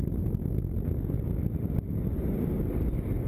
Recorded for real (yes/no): yes